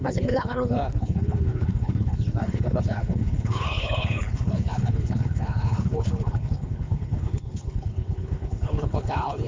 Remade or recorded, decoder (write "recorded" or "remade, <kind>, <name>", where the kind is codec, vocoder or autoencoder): remade, codec, HILCodec